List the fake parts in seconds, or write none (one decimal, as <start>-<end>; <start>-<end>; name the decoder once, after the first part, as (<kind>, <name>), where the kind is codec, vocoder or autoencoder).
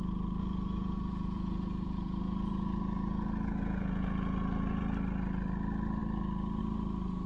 0.4-4.8 (vocoder, Vocos)